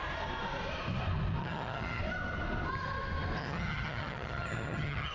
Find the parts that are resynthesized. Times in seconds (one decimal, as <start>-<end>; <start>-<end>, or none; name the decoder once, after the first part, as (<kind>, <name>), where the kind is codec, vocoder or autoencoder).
1.4-2.0 (vocoder, HiFi-GAN); 3.4-5.1